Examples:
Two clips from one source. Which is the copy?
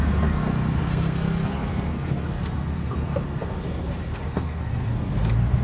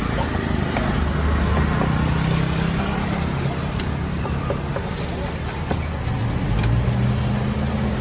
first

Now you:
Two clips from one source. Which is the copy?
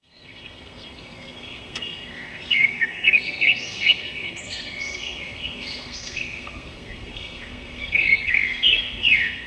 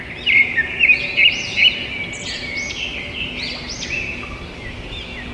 first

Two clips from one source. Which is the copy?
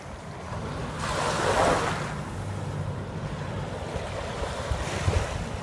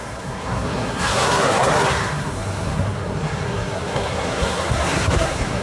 second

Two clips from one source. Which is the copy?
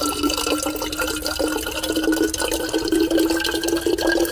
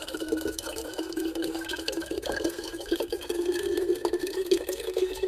second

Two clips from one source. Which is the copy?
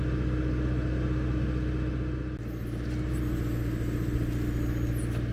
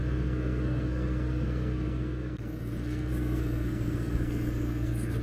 second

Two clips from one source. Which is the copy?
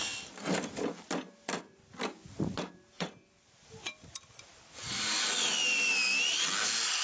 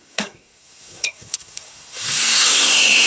second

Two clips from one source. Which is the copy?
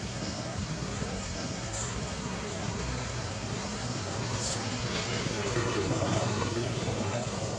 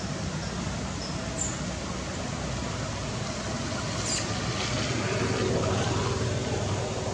first